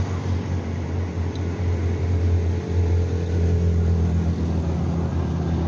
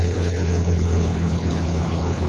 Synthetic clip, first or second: second